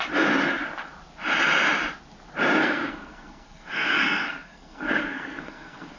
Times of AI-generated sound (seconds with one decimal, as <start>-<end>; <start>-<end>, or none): 2.6-6.0